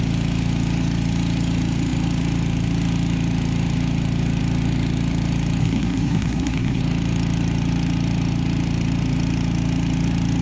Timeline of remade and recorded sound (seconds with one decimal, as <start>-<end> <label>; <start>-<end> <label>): 0.0-5.6 recorded; 5.6-6.8 remade; 6.8-10.4 recorded